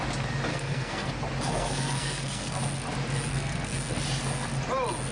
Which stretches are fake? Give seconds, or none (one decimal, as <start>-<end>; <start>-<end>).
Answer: 0.5-1.1; 1.5-2.6; 3.3-3.9